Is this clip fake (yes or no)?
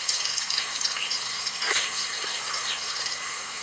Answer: yes